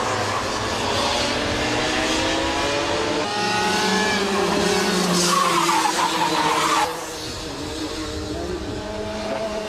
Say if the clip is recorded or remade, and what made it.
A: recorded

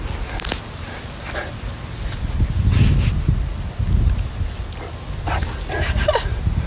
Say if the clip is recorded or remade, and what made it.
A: recorded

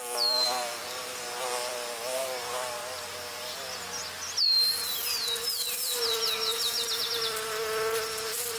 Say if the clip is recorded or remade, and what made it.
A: recorded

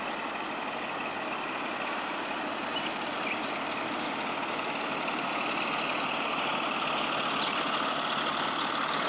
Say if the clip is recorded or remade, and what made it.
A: recorded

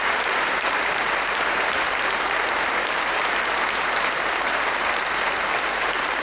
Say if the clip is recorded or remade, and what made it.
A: remade, vocoder, BigVGAN v2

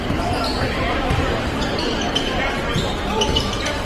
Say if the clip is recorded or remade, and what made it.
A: remade, vocoder, BigVGAN v2